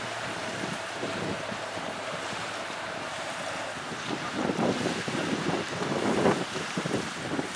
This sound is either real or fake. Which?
fake